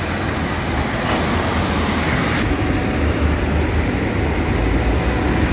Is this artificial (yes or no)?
no